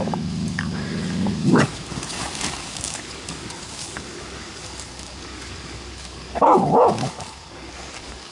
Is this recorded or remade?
remade